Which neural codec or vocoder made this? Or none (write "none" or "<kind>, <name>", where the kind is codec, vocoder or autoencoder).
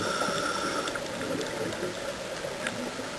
none